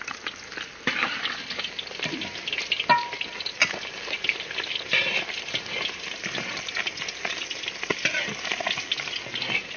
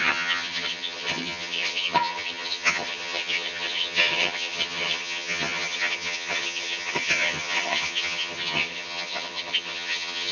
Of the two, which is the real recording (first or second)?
first